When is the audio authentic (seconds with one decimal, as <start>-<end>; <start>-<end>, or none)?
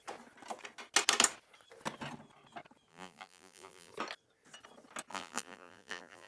0.0-2.9; 3.9-5.1